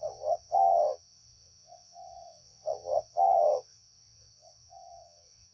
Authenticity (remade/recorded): remade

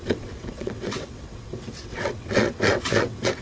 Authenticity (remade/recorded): remade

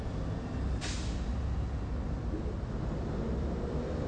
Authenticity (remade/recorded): recorded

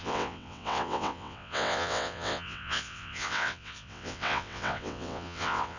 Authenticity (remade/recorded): remade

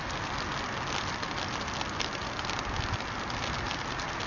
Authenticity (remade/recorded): recorded